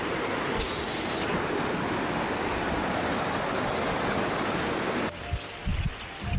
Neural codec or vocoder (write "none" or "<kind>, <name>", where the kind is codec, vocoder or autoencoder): none